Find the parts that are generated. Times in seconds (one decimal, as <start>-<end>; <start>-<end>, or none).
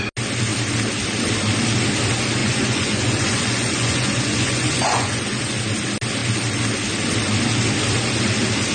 2.4-5.6